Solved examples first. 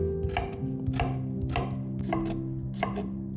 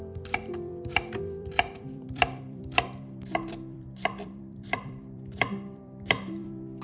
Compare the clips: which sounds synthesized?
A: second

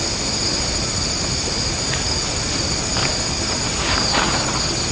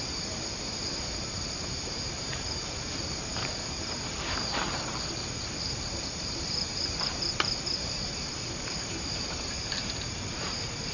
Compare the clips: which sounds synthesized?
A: second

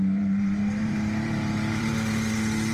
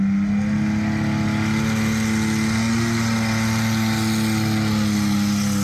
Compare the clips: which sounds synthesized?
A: first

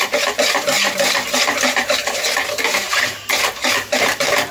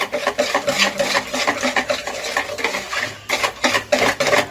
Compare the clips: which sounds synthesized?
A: first